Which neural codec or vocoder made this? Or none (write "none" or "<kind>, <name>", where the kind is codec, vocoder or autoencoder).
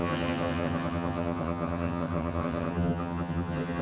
vocoder, HiFi-GAN